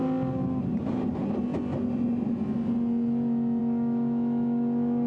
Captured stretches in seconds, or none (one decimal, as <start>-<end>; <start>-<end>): 0.0-3.6